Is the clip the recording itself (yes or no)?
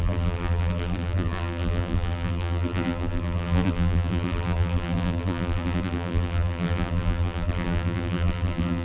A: no